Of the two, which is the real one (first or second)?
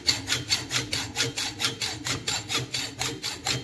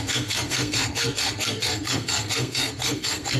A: first